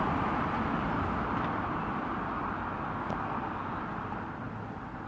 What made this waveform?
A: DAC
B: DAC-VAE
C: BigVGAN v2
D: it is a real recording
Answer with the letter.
D